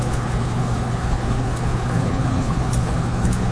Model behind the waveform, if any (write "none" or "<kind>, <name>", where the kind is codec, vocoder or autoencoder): codec, HILCodec